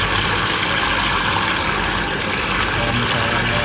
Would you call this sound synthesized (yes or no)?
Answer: no